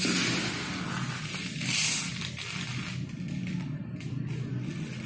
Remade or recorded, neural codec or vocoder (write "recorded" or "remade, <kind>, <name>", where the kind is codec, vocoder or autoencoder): recorded